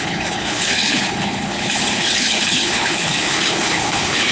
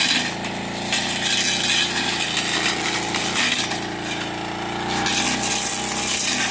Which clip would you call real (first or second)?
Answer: second